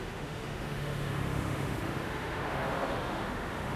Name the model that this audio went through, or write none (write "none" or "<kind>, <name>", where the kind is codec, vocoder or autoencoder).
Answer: autoencoder, DAC-VAE